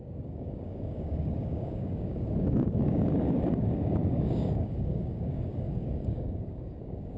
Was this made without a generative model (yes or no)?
no